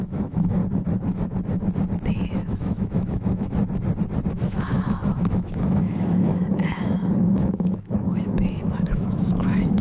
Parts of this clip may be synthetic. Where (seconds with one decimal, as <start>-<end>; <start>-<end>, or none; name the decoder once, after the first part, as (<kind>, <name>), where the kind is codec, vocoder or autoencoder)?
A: 0.0-0.6 (autoencoder, DAC-VAE); 2.1-3.6; 4.3-9.8

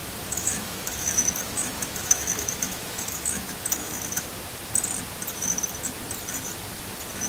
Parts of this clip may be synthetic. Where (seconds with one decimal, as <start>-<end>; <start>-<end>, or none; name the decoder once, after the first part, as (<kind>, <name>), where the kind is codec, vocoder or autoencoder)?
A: 0.0-4.3 (autoencoder, DAC-VAE)

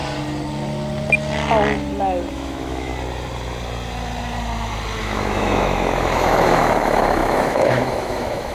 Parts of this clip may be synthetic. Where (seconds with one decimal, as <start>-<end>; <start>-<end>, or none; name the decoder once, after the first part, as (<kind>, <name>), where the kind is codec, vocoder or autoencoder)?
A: 2.3-2.9 (autoencoder, DAC-VAE); 5.0-8.5

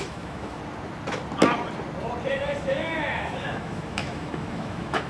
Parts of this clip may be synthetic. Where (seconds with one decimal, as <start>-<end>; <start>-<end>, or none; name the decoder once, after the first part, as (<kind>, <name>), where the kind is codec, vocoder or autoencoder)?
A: 0.0-0.6 (autoencoder, DAC-VAE); 2.3-5.1

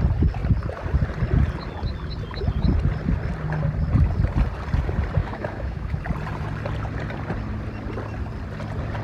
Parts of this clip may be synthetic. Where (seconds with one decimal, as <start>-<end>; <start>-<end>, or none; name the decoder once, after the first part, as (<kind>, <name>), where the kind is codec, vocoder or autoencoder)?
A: 5.2-6.0 (autoencoder, DAC-VAE)

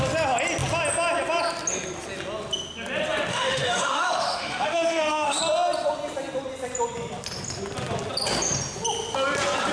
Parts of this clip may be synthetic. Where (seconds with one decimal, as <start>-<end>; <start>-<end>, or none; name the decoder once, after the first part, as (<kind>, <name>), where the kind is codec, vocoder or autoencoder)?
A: 3.3-5.4 (autoencoder, DAC-VAE)